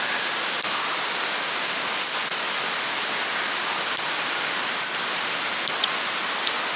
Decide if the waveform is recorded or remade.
recorded